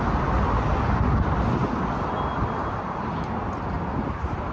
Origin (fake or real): real